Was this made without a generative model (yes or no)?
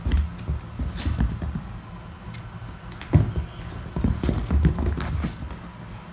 yes